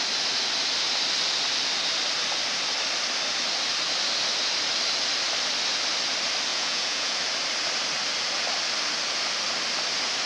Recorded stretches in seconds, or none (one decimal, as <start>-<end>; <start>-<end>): 0.0-6.5; 7.2-10.3